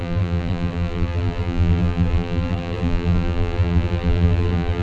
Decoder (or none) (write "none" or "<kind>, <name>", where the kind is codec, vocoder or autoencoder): vocoder, BigVGAN v2